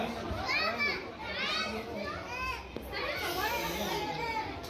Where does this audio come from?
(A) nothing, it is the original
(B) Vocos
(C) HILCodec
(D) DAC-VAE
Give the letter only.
A